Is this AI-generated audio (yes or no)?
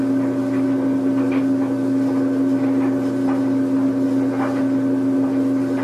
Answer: no